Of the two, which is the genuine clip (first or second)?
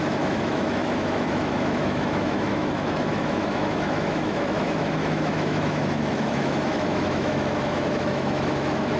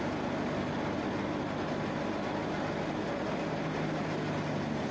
second